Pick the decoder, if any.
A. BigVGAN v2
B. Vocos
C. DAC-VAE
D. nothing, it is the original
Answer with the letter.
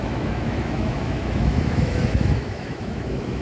C